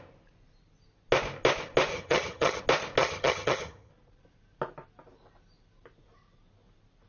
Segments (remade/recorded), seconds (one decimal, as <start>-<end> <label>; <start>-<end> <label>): 0.0-1.9 recorded; 1.9-2.6 remade; 2.6-3.0 recorded; 3.0-3.9 remade; 3.9-7.1 recorded